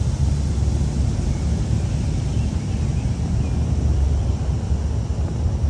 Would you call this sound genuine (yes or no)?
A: yes